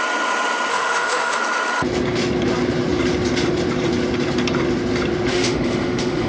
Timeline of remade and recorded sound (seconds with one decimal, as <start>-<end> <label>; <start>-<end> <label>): 0.0-0.7 recorded; 0.7-1.4 remade; 1.4-5.3 recorded; 5.3-6.3 remade